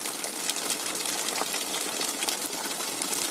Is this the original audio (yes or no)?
yes